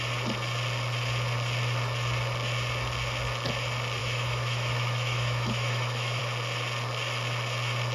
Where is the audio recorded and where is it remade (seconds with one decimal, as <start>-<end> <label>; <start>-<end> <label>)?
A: 0.0-4.0 recorded; 4.0-6.2 remade; 6.2-7.9 recorded